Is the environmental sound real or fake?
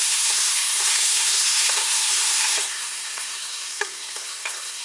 fake